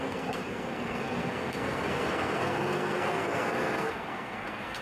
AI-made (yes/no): yes